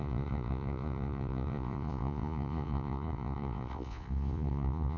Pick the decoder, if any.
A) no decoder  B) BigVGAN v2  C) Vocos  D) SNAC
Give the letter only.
C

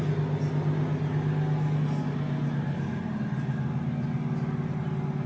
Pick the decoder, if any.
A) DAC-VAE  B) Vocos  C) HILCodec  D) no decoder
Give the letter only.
D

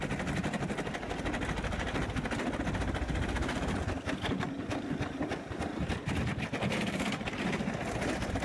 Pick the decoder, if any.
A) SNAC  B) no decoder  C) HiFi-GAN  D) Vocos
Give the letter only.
B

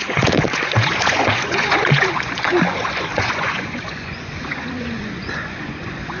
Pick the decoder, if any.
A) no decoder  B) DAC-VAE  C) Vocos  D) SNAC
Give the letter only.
C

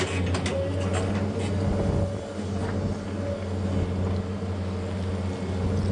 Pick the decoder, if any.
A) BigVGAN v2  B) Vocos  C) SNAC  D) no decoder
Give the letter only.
D